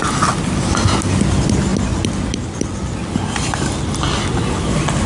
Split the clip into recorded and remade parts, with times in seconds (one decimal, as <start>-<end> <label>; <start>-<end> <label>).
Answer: 0.0-5.1 recorded